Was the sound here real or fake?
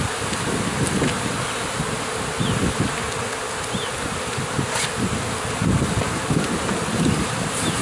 real